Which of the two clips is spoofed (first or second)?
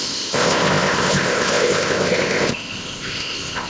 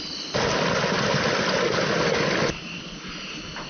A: first